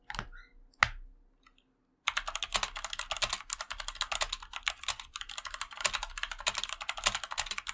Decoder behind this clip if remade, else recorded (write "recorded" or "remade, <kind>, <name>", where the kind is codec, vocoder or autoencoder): recorded